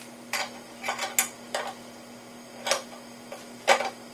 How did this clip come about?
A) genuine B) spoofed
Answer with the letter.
A